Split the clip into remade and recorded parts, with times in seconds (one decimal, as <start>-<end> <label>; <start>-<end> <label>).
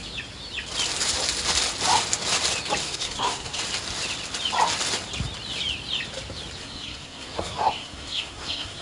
0.0-2.8 recorded; 2.8-3.6 remade; 3.6-6.6 recorded; 6.6-8.8 remade